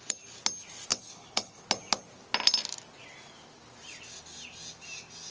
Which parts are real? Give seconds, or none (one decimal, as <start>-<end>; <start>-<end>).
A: 0.0-0.9; 1.6-5.3